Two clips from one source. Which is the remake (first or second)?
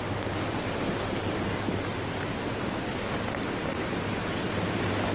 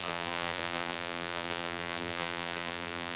second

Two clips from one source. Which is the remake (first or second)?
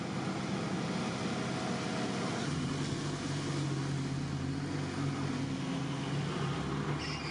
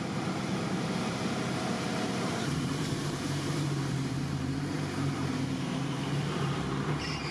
second